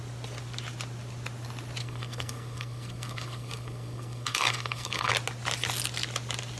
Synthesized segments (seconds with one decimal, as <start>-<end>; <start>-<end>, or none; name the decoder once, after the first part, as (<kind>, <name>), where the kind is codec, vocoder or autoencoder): 1.8-5.1 (codec, SNAC)